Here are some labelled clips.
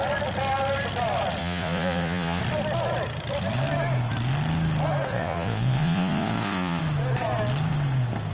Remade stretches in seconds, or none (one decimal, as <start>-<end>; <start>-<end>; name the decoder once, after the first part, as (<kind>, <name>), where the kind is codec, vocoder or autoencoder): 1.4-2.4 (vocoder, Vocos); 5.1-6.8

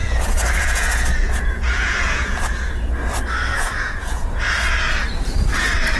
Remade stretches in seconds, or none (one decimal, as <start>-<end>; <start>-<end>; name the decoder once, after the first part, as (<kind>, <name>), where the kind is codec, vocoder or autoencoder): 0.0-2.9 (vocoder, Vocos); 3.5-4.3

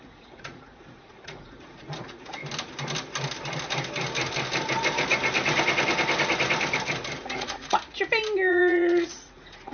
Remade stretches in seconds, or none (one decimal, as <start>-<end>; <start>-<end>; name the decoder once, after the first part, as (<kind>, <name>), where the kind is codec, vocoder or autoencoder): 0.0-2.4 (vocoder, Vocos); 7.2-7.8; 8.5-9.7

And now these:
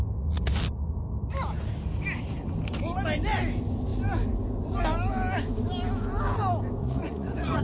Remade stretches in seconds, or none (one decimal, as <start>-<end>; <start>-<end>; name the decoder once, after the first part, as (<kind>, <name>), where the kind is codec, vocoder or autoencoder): 6.8-7.6 (vocoder, Vocos)

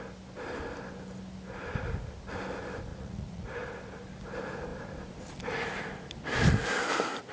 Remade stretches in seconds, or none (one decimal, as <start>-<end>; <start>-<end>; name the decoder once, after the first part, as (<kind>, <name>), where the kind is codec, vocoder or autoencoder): 2.9-3.5 (vocoder, Vocos)

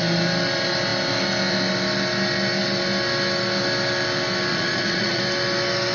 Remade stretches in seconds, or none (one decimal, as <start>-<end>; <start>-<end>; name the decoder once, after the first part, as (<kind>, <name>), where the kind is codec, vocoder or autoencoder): 4.5-5.2 (vocoder, Vocos)